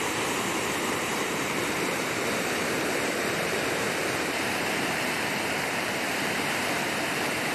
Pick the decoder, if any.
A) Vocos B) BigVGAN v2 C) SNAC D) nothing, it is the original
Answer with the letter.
B